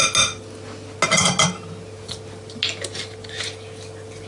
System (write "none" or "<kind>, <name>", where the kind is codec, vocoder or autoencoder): none